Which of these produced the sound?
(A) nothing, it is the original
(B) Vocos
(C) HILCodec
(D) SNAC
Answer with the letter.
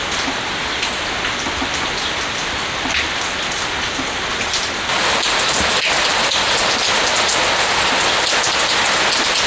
A